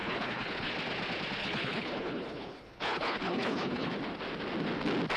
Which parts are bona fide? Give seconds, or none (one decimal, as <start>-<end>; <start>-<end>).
0.7-1.4; 3.9-5.2